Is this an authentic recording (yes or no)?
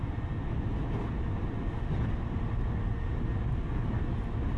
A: yes